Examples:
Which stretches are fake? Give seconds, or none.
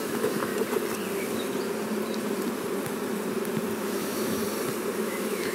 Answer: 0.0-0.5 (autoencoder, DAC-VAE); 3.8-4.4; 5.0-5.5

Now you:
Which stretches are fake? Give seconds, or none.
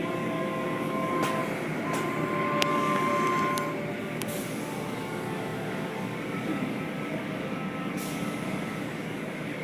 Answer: 0.0-1.4 (codec, DAC); 2.7-3.1; 4.0-9.6